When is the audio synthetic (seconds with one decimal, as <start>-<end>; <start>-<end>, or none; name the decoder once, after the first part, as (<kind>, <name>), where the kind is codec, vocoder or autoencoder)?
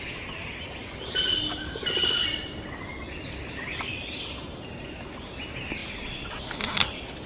none